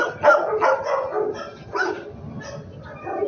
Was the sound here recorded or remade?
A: recorded